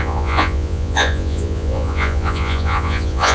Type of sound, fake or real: fake